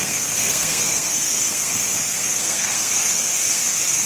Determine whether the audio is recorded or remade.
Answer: remade